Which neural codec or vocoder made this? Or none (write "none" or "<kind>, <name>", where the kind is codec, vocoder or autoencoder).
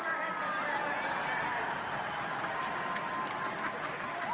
none